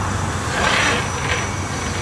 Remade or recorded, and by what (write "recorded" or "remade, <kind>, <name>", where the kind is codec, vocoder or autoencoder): recorded